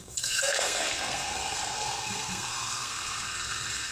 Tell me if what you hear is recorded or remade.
remade